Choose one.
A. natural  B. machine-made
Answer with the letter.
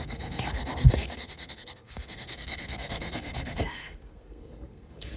B